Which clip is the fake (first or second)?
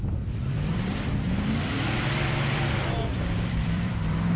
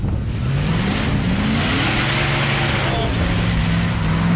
first